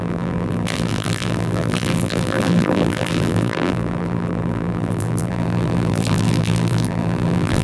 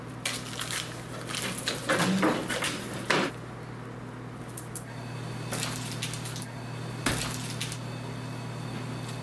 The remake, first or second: first